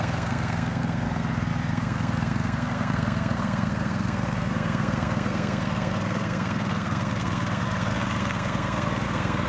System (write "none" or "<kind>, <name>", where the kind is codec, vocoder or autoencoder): codec, SNAC